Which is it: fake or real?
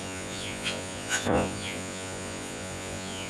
fake